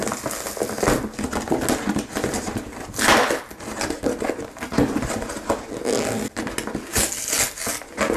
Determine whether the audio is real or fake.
real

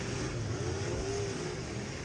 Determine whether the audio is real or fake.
real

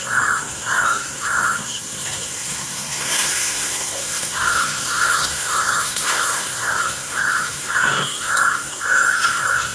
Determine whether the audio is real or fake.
fake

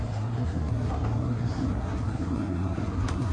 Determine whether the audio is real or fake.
fake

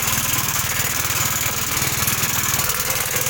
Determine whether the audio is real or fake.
fake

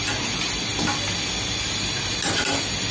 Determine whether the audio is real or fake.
real